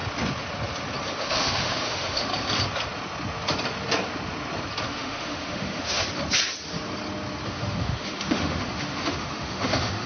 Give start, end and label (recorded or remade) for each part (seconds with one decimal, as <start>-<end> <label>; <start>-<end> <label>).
0.0-1.1 recorded; 1.1-2.3 remade; 2.3-4.9 recorded; 4.9-6.0 remade; 6.0-7.5 recorded; 7.5-10.1 remade